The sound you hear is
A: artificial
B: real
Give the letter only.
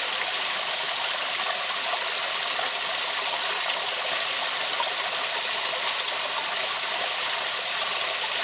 B